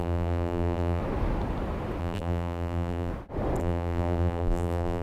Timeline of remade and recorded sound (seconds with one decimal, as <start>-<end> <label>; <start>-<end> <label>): 0.0-1.0 remade; 1.0-2.0 recorded; 2.0-3.1 remade; 3.1-3.6 recorded; 3.6-5.0 remade